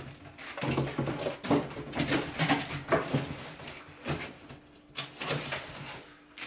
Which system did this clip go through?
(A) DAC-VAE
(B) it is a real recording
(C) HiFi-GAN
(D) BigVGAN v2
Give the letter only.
B